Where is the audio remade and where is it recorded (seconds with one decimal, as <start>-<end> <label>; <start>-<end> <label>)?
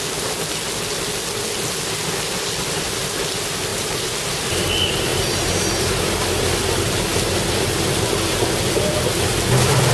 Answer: 0.0-3.7 recorded; 3.7-4.4 remade; 4.4-9.9 recorded